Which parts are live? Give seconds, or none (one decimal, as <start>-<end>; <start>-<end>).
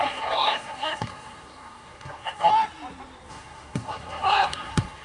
2.5-3.3